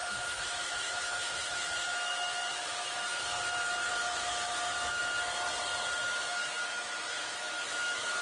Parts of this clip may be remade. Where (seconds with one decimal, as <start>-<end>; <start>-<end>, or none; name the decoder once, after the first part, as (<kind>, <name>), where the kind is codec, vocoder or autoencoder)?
0.0-5.0 (autoencoder, DAC-VAE); 6.0-8.2